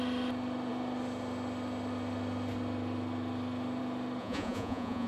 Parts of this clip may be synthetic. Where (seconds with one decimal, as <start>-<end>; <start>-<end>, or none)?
4.2-5.1